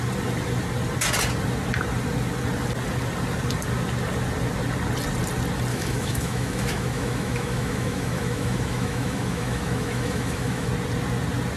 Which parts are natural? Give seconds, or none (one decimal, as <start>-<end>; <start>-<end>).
0.0-5.7; 10.7-11.6